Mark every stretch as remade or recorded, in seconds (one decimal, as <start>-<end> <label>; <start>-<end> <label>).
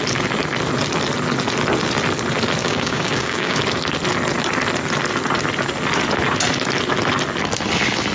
0.0-2.6 recorded; 2.6-3.6 remade; 3.6-8.1 recorded